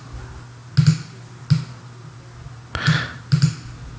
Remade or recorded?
recorded